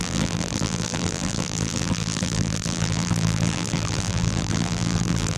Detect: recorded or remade remade